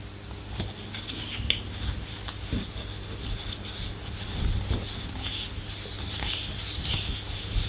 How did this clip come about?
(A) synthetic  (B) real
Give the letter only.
B